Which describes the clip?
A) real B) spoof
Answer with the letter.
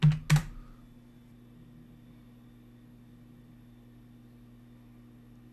A